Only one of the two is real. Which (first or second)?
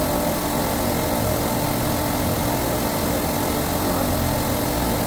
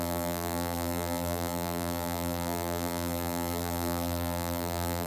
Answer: first